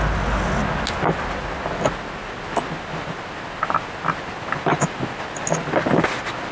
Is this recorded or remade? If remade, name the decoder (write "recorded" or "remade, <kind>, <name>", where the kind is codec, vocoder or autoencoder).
recorded